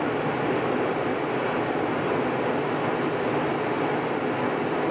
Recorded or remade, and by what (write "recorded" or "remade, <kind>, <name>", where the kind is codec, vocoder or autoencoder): recorded